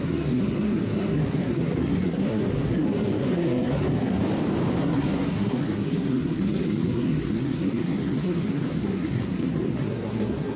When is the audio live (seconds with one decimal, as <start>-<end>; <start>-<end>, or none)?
4.2-4.8